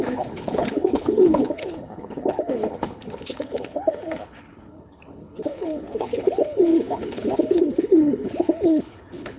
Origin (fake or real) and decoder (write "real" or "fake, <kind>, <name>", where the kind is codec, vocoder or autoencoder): fake, codec, HILCodec